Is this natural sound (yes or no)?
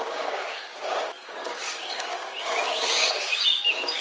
no